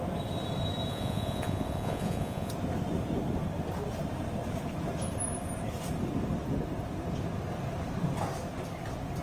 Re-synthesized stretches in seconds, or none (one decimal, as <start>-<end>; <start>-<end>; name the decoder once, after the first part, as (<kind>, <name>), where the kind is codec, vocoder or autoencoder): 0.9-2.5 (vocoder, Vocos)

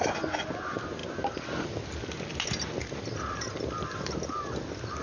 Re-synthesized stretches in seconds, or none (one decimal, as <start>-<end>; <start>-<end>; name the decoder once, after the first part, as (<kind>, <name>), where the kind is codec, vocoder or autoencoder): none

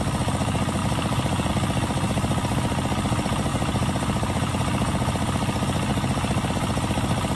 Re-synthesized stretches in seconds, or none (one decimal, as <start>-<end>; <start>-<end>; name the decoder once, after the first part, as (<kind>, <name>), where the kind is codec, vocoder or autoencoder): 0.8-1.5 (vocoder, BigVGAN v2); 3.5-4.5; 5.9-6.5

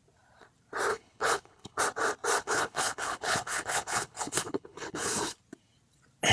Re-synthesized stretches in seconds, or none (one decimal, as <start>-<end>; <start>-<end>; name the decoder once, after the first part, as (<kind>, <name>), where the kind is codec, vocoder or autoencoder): 0.9-1.8 (codec, HILCodec); 2.4-5.4